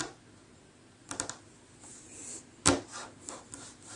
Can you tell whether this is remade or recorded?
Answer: recorded